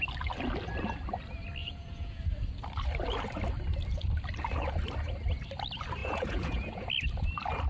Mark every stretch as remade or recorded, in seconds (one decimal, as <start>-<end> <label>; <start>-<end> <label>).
0.0-1.6 recorded; 1.6-2.2 remade; 2.2-6.0 recorded; 6.0-6.9 remade; 6.9-7.7 recorded